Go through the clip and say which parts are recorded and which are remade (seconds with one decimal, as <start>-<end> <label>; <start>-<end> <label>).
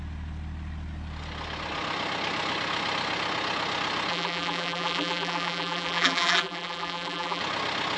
0.0-4.1 recorded; 4.1-7.4 remade; 7.4-8.0 recorded